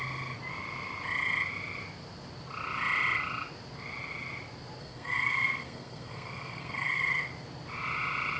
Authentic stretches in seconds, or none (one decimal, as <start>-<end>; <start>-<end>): 0.0-4.8; 7.3-8.4